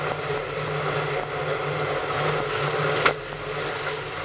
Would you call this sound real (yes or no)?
yes